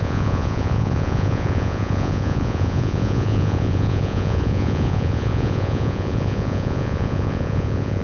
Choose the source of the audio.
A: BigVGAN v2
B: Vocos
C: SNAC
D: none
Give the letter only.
B